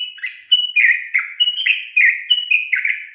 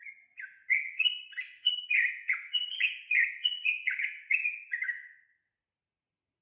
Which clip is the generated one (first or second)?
second